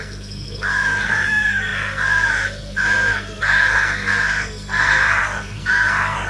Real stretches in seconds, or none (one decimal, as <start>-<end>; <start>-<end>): none